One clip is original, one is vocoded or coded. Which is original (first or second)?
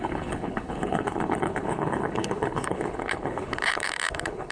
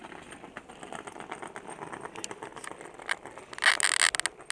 second